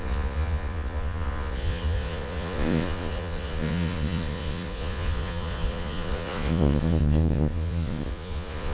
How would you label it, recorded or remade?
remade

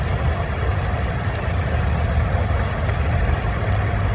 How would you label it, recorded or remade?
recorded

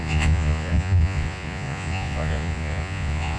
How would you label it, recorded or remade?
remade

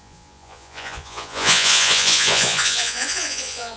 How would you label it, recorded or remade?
remade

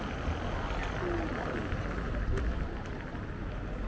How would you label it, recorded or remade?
recorded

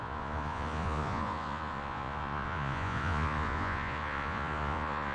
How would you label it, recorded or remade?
remade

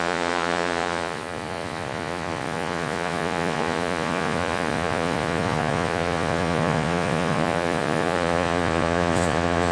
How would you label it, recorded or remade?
remade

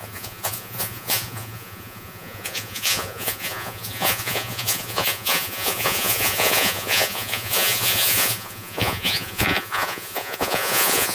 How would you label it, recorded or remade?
remade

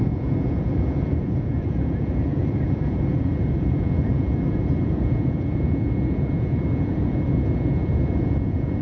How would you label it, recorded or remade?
remade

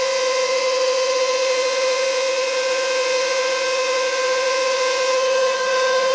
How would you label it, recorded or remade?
remade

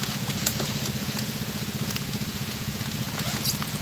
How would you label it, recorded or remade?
remade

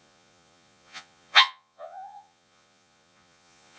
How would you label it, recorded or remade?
remade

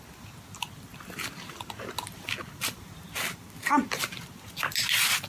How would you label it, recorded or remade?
recorded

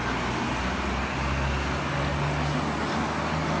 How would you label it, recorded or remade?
recorded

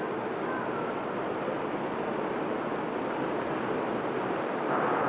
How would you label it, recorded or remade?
recorded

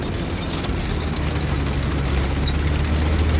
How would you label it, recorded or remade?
recorded